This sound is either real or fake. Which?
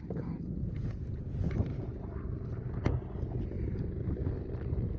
real